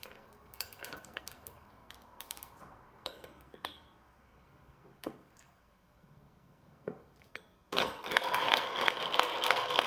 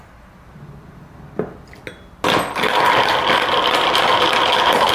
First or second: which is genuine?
second